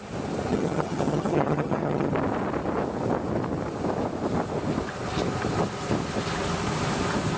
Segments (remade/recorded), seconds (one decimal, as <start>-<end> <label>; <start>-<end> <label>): 0.0-0.5 recorded; 0.5-2.1 remade; 2.1-7.4 recorded